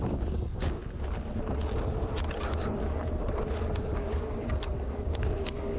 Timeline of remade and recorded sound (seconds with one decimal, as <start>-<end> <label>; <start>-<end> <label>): 0.0-0.8 remade; 0.8-3.6 recorded; 3.6-5.8 remade

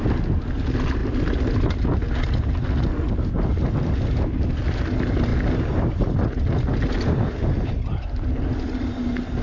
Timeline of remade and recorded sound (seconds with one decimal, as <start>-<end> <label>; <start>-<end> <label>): 0.0-9.4 recorded

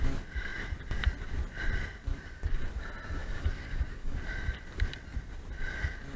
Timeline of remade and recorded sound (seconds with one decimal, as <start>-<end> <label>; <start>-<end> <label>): 0.0-2.1 recorded; 2.1-2.7 remade; 2.7-3.2 recorded; 3.2-4.2 remade; 4.2-6.2 recorded

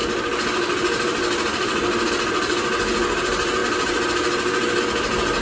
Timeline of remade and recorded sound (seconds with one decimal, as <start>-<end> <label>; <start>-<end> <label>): 0.0-5.4 recorded

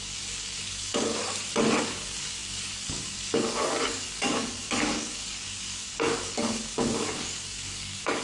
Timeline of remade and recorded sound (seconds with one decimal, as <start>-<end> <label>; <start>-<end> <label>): 0.0-1.2 remade; 1.2-1.8 recorded; 1.8-8.2 remade

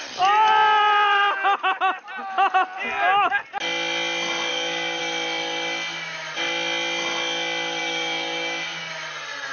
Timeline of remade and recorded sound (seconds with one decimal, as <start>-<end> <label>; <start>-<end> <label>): 0.0-4.5 recorded; 4.5-5.0 remade; 5.0-7.8 recorded; 7.8-8.9 remade; 8.9-9.5 recorded